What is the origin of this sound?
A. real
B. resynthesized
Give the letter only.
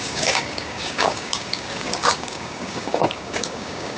B